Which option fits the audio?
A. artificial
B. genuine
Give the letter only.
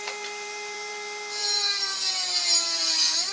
A